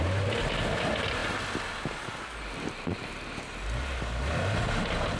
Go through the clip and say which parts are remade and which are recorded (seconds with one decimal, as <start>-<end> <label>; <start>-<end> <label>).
0.0-5.2 recorded